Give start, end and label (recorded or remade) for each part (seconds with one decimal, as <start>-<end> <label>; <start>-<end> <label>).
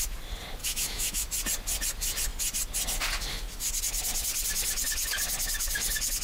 0.0-0.6 recorded; 0.6-1.3 remade; 1.3-6.2 recorded